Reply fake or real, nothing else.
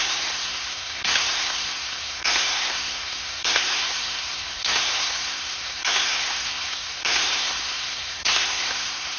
fake